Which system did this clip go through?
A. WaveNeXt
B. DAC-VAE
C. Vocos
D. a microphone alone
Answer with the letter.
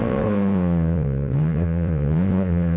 A